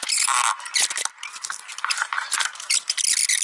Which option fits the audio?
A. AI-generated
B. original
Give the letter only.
B